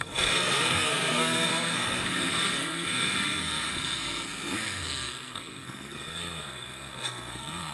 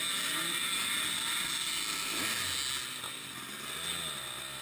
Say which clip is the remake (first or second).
first